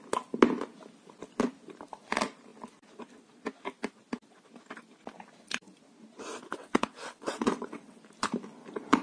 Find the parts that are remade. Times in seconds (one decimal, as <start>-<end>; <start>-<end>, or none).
6.6-8.0